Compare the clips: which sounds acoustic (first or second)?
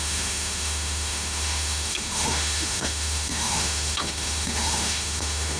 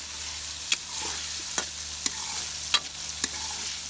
second